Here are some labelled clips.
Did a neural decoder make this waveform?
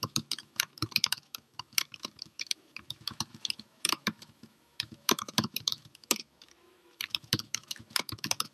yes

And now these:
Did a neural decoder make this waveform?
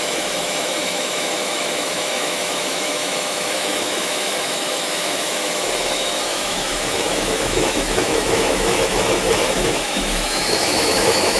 yes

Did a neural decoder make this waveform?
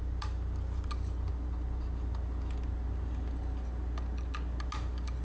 no